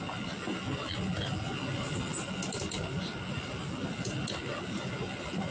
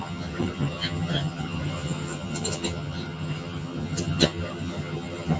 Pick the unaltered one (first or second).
first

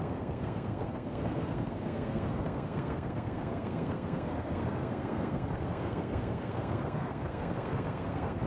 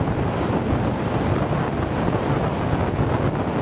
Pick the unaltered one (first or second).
second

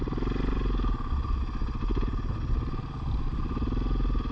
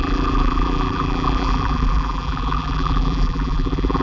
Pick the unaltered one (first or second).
first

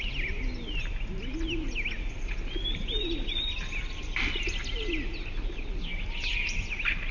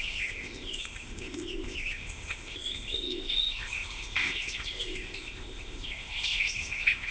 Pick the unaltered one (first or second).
first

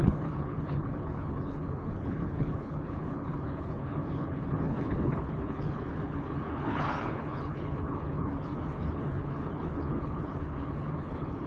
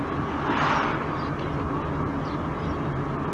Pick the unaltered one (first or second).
second